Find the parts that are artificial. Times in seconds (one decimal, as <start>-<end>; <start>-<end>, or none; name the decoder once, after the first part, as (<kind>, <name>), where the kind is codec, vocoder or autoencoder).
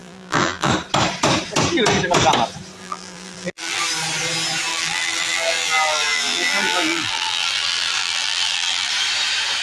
0.0-0.7 (vocoder, BigVGAN v2); 2.8-3.8; 4.7-8.9